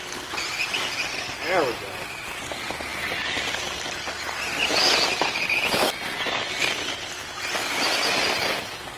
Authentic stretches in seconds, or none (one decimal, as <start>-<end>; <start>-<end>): 0.0-9.0